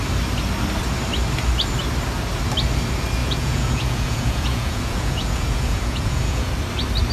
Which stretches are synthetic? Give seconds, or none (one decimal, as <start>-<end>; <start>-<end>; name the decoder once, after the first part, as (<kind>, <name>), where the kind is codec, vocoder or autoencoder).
3.2-6.5 (vocoder, Vocos)